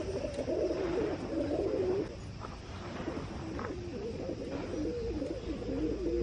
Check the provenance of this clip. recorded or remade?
recorded